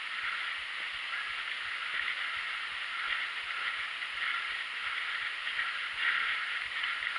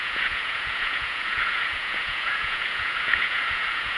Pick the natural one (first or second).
first